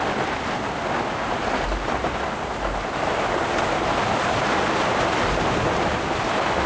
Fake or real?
real